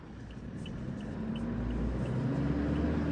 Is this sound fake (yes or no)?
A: no